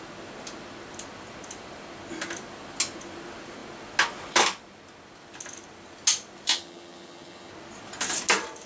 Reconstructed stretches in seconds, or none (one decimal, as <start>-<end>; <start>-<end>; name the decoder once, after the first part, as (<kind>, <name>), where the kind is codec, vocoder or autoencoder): 6.5-7.5 (vocoder, HiFi-GAN)